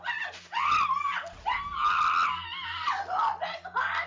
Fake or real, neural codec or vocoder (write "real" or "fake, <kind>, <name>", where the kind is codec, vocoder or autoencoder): real